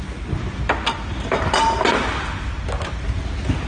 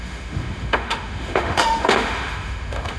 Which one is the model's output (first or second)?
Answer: second